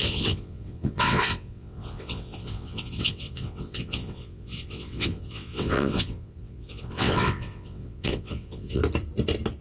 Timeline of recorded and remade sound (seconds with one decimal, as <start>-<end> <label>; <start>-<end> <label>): 0.0-8.8 remade; 8.8-9.6 recorded